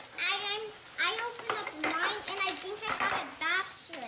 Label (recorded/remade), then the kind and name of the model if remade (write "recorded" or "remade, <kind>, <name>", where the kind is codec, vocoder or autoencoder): recorded